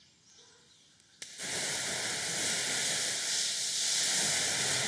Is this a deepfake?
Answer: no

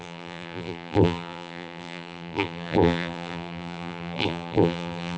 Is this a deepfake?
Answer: yes